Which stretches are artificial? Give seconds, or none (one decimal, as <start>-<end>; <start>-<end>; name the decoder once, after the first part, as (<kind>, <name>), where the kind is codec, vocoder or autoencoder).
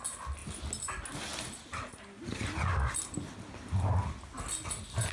none